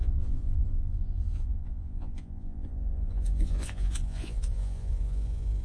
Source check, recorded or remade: remade